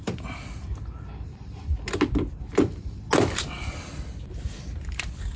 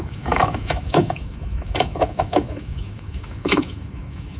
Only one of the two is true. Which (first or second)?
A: first